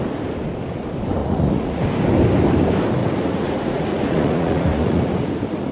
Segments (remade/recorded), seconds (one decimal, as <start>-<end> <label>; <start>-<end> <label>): 0.0-1.2 recorded; 1.2-1.8 remade; 1.8-3.0 recorded; 3.0-5.7 remade

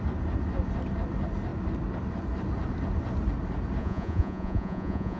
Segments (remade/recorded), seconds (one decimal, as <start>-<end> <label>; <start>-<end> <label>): 0.0-3.8 recorded; 3.8-5.2 remade

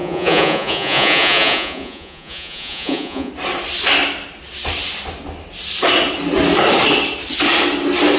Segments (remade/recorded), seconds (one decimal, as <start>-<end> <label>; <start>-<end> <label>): 0.0-3.3 remade; 3.3-8.2 recorded

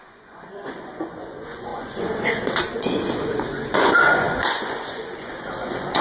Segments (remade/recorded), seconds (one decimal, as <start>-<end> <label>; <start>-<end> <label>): 0.0-6.0 remade

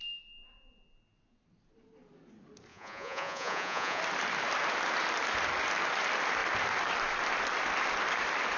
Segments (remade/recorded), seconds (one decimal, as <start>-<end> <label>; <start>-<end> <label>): 0.0-2.7 recorded; 2.7-4.0 remade; 4.0-8.6 recorded

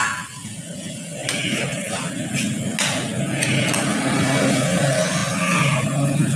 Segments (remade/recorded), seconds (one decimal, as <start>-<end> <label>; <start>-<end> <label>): 0.0-6.4 recorded